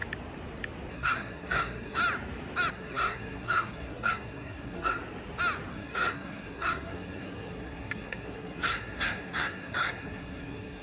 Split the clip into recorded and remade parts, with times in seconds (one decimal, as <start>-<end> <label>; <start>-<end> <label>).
0.0-0.9 recorded; 0.9-2.0 remade; 2.0-2.7 recorded; 2.7-5.0 remade; 5.0-5.7 recorded; 5.7-10.8 remade